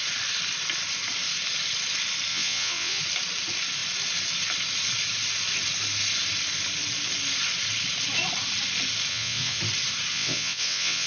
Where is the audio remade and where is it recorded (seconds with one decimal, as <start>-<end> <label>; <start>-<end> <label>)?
0.0-2.3 recorded; 2.3-3.0 remade; 3.0-9.1 recorded; 9.1-9.6 remade; 9.6-10.1 recorded; 10.1-11.1 remade